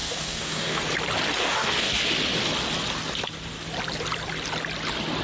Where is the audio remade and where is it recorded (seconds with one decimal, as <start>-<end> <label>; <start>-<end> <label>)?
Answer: 0.0-0.8 remade; 0.8-1.4 recorded; 1.4-2.0 remade; 2.0-5.2 recorded